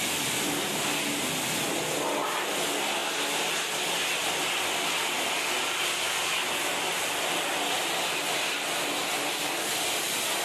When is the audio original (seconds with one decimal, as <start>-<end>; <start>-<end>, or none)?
0.0-10.4